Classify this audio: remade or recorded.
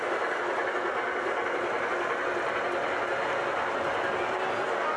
recorded